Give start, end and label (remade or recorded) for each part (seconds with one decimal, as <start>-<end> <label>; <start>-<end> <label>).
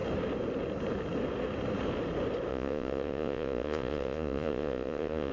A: 0.0-2.5 recorded; 2.5-5.3 remade